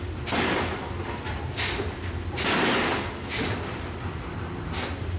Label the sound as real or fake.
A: real